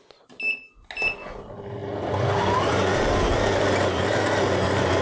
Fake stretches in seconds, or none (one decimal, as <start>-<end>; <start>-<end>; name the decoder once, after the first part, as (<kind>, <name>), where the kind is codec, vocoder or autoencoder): none